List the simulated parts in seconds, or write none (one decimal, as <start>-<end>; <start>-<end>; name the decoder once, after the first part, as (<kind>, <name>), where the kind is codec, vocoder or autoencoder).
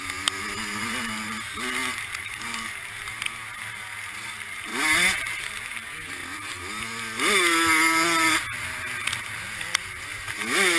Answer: none